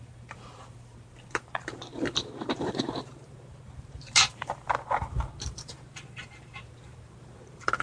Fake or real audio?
fake